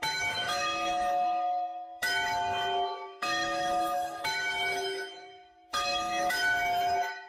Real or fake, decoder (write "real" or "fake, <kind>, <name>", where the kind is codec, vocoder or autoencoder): fake, autoencoder, DAC-VAE